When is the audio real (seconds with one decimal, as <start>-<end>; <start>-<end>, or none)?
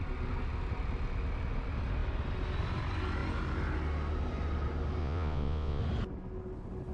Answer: 0.0-5.0; 5.8-6.9